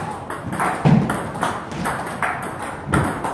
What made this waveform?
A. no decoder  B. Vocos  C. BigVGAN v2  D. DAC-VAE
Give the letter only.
A